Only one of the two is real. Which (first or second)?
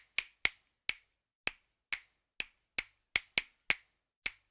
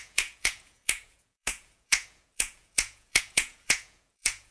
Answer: first